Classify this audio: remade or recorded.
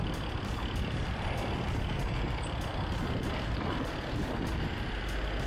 recorded